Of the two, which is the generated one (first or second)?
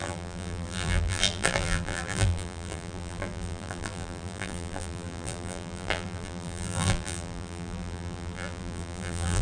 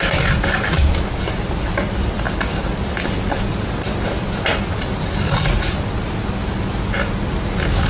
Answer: first